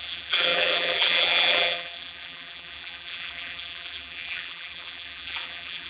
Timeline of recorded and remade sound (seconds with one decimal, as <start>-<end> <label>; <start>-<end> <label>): 0.0-5.9 remade